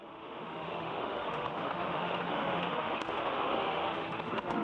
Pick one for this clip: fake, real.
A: fake